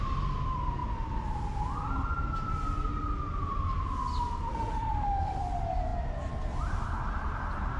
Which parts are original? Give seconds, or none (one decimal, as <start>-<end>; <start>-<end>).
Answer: 0.0-4.5; 5.4-7.8